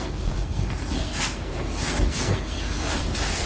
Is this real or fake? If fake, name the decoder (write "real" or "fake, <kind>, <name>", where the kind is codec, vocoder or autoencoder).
fake, codec, SNAC